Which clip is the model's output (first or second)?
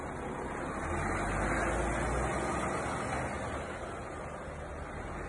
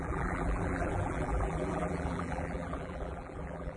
second